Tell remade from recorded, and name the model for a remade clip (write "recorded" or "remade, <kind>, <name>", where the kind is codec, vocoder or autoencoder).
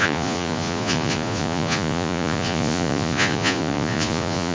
remade, vocoder, Vocos